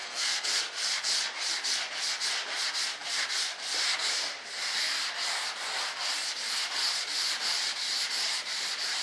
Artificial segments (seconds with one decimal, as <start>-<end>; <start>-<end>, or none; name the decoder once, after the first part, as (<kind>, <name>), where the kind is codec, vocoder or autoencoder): 0.0-0.6 (codec, SNAC)